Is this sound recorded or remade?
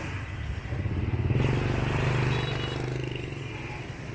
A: recorded